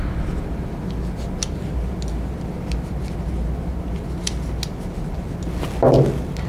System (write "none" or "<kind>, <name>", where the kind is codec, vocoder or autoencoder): none